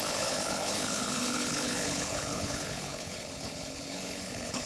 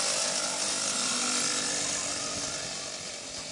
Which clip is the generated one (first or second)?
first